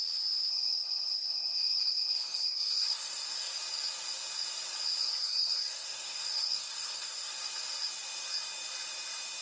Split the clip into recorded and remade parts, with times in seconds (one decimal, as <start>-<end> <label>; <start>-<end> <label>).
0.0-0.5 recorded; 0.5-3.5 remade; 3.5-5.0 recorded; 5.0-7.3 remade; 7.3-9.4 recorded